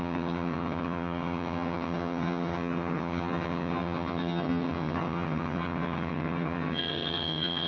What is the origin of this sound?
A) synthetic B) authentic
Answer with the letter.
A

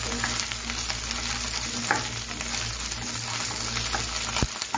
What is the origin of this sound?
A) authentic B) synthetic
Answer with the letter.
A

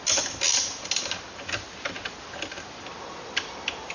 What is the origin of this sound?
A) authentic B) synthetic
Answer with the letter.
A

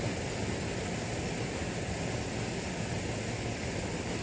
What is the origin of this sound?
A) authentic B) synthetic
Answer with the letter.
A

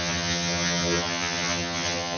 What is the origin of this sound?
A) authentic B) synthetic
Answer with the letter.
B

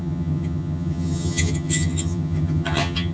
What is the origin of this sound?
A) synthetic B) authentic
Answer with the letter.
A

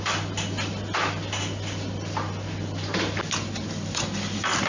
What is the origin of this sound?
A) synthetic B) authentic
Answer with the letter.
B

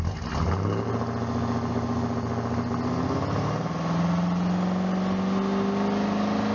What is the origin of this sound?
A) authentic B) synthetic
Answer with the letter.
A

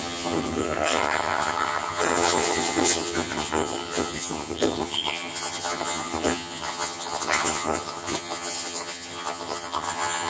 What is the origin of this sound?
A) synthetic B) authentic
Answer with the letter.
A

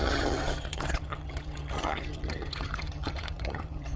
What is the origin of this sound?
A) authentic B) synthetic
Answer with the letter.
B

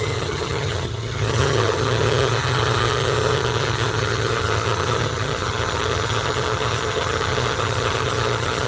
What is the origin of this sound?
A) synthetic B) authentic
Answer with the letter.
A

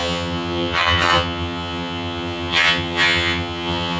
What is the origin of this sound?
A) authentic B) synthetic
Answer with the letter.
B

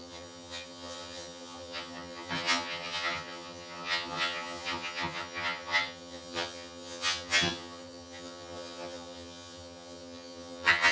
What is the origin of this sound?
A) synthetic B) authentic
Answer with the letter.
A